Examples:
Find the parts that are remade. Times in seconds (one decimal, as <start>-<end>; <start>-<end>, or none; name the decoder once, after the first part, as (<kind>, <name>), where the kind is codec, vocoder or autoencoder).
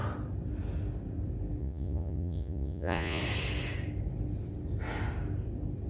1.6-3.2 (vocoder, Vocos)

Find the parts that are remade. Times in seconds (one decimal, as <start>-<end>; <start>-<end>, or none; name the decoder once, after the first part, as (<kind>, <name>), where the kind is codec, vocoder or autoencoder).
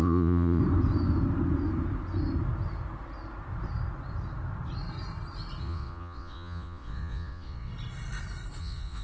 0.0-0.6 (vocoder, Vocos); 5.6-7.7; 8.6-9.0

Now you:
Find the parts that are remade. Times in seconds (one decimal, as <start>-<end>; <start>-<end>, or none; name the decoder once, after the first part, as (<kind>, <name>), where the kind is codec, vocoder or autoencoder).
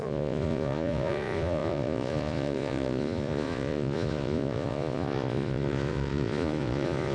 0.0-7.1 (vocoder, Vocos)